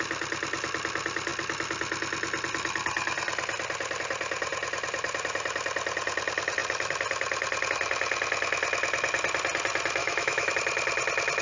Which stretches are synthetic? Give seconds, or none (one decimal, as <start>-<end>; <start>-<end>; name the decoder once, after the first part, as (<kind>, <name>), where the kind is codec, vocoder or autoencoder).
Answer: 10.0-10.5 (autoencoder, DAC-VAE)